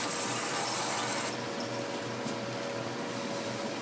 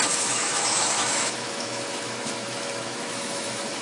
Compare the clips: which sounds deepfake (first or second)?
second